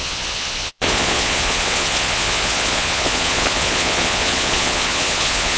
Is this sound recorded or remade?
remade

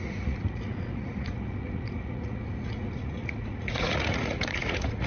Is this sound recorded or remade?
remade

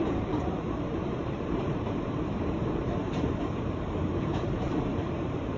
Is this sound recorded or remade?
remade